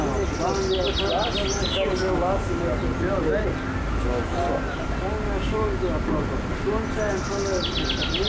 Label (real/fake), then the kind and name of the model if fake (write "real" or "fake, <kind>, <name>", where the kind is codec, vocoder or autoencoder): real